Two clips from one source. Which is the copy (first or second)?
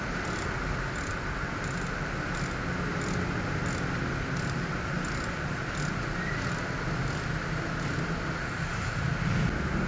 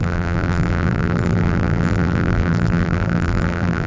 second